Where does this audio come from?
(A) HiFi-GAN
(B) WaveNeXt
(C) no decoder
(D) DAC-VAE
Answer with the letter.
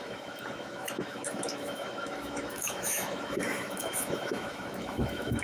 D